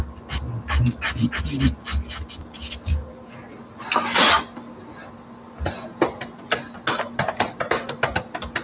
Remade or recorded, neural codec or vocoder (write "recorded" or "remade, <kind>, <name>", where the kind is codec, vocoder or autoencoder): recorded